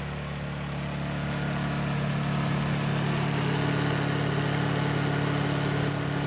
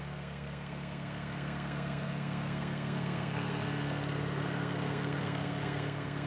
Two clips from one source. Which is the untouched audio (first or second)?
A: first